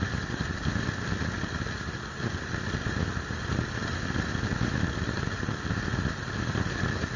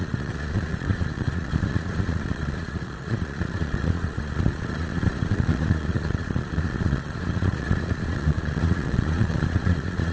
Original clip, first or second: first